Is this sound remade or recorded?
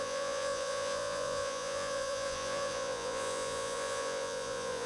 remade